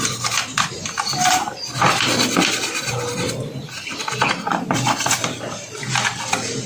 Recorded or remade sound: remade